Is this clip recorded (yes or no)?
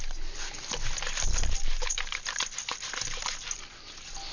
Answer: yes